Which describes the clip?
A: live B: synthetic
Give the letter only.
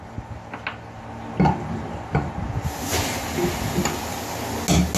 A